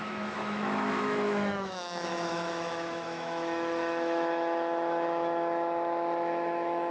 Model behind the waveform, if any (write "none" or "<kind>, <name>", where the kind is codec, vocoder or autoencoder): autoencoder, DAC-VAE